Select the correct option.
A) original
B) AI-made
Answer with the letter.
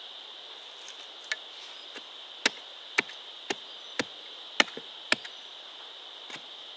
A